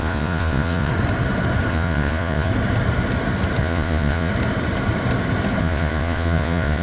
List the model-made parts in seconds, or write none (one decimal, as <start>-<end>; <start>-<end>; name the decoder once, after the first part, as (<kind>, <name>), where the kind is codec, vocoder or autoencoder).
0.0-0.9 (vocoder, Vocos); 1.7-2.5; 3.6-4.3; 5.6-6.8